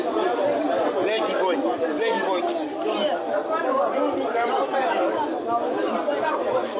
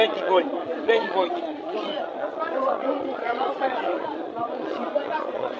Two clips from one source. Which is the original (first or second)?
first